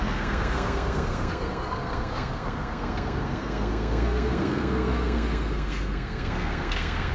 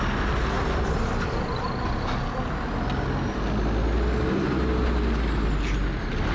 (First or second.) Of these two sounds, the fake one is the first